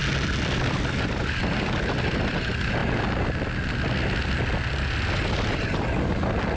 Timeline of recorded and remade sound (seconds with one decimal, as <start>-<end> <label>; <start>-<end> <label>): 0.0-6.6 recorded